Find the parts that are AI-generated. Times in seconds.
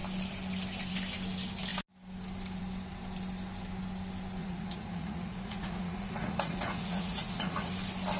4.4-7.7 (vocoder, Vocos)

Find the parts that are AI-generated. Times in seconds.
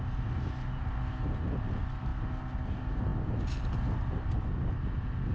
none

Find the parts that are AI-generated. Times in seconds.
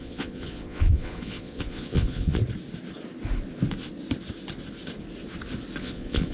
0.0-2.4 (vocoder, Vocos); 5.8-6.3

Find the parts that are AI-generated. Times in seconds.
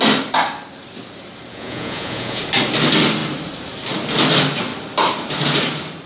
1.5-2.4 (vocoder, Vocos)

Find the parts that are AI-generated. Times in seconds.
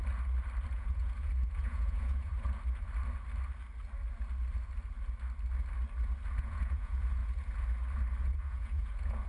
0.7-2.3 (vocoder, Vocos); 6.4-7.2; 8.2-9.3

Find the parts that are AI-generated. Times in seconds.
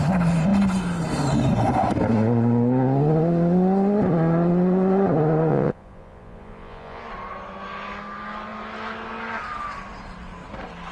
5.5-7.0 (vocoder, Vocos)